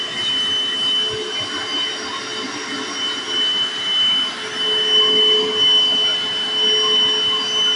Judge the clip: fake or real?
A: real